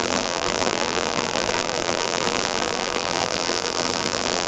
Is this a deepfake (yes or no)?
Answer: yes